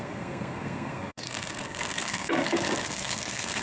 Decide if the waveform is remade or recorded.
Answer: remade